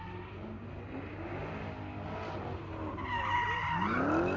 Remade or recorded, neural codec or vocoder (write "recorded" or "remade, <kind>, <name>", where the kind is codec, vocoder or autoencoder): recorded